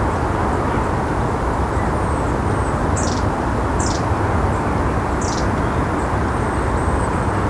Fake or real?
real